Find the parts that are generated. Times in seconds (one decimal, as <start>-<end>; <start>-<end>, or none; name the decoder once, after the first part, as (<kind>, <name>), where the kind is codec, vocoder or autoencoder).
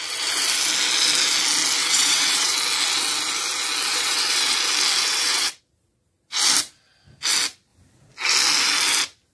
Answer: 1.8-2.5 (vocoder, WaveNeXt); 3.9-4.5; 5.0-5.6